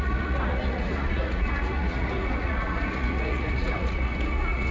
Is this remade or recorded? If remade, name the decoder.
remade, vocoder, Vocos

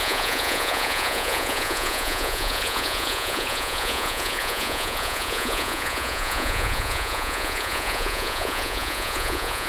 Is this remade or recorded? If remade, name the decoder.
remade, vocoder, Vocos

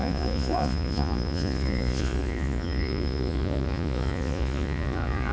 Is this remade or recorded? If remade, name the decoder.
remade, vocoder, Vocos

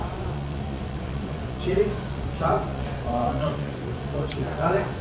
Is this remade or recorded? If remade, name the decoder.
remade, vocoder, Vocos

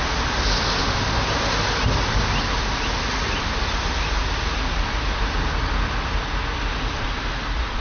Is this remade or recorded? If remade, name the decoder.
recorded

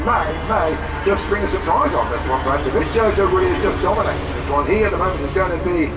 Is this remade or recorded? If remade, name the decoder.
recorded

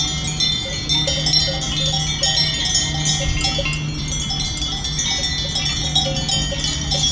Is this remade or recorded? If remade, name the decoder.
recorded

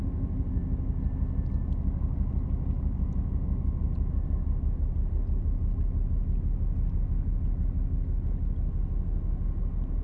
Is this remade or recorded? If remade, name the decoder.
recorded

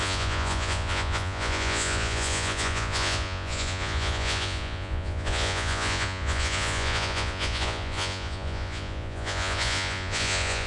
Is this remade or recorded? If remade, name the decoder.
remade, vocoder, Vocos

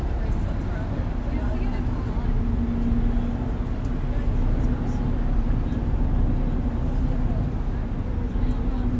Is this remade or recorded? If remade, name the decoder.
recorded